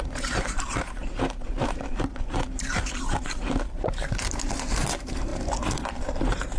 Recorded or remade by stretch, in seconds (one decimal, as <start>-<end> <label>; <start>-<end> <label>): 0.0-5.3 remade; 5.3-6.0 recorded; 6.0-6.6 remade